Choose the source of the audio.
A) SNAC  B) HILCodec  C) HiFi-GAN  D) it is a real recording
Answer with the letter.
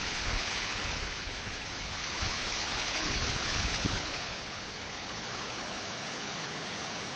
B